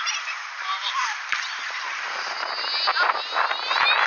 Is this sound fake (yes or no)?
yes